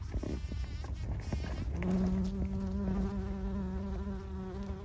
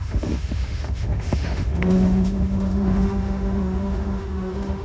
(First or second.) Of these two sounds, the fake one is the second